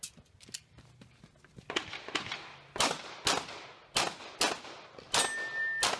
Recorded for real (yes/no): yes